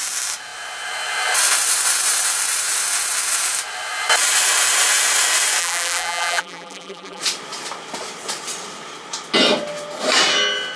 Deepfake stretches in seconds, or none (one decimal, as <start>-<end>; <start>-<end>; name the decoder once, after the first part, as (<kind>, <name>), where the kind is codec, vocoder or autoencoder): 5.6-7.2 (vocoder, BigVGAN v2)